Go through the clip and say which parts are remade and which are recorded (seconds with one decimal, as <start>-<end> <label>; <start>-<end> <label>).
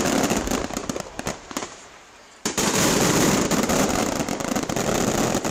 0.0-0.8 recorded; 0.8-4.0 remade; 4.0-5.5 recorded